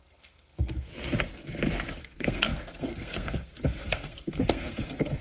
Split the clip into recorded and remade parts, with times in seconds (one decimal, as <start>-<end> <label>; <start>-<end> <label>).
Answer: 0.0-0.9 remade; 0.9-2.0 recorded; 2.0-5.2 remade